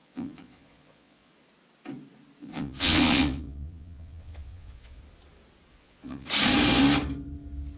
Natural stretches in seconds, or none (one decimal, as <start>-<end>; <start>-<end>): 1.3-2.4; 5.0-5.7; 6.3-7.8